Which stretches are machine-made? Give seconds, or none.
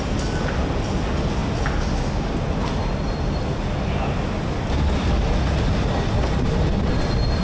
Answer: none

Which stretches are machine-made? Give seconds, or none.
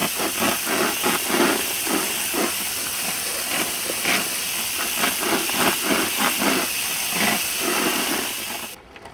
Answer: none